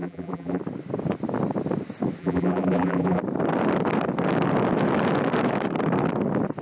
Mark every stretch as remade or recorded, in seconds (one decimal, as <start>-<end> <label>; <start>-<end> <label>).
0.0-0.6 remade; 0.6-2.2 recorded; 2.2-3.2 remade; 3.2-6.6 recorded

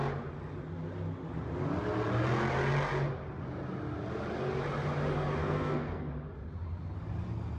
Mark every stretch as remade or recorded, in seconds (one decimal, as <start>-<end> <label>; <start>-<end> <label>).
0.0-5.4 recorded; 5.4-6.1 remade; 6.1-7.6 recorded